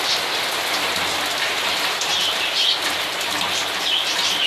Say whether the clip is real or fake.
real